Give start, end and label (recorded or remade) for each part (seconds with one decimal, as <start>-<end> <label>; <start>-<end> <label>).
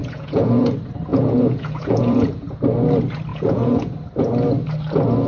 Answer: 0.0-0.7 remade; 0.7-1.1 recorded; 1.1-2.6 remade; 2.6-3.3 recorded; 3.3-3.9 remade; 3.9-5.3 recorded